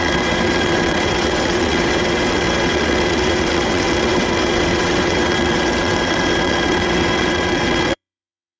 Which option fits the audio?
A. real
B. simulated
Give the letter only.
B